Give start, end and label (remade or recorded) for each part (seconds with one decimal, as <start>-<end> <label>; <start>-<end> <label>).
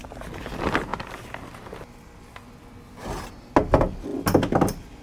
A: 0.0-0.9 recorded; 0.9-1.6 remade; 1.6-5.0 recorded